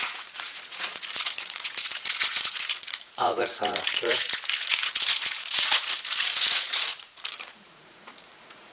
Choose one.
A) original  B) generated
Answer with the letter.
B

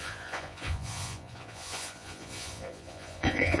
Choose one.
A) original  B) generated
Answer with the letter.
B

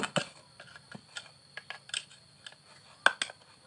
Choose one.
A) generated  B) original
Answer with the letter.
B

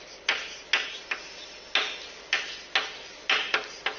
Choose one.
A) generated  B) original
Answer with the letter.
B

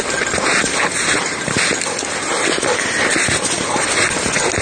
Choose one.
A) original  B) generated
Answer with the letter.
A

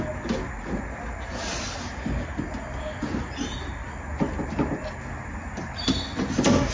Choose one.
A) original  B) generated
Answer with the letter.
A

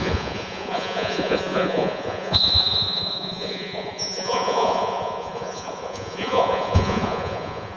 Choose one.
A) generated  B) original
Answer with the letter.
A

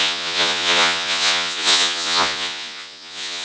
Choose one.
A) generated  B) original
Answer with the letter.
A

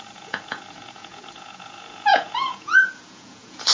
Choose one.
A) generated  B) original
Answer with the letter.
A